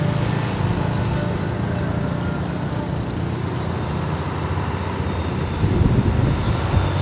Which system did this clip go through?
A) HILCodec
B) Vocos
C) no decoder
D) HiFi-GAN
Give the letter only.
C